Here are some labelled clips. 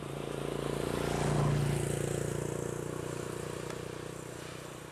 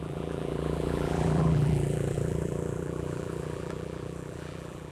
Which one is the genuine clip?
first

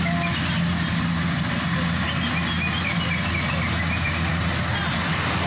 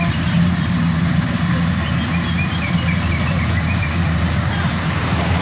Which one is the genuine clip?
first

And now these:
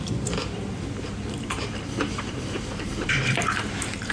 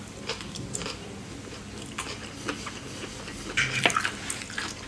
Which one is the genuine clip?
second